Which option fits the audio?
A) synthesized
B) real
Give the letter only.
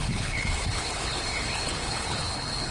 A